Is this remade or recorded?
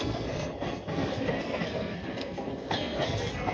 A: remade